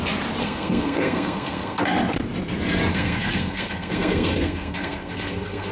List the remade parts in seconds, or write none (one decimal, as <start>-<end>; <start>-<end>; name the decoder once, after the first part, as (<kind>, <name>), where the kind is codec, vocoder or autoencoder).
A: 0.4-1.8 (codec, SNAC); 2.9-5.7